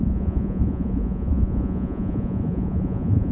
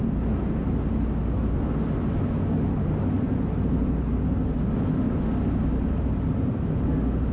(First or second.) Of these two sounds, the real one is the second